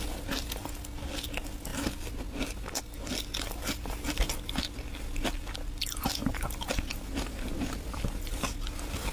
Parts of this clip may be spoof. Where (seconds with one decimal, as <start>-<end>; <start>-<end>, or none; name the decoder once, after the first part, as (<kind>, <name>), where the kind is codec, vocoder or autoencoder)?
none